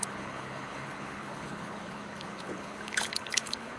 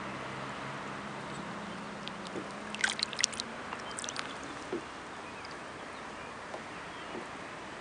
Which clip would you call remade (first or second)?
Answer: first